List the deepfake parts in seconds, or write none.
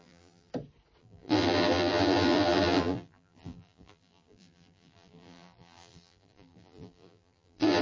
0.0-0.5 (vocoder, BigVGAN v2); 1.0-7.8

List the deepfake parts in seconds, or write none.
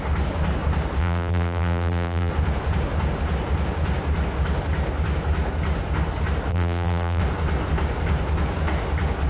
1.0-2.3 (vocoder, BigVGAN v2); 6.5-7.2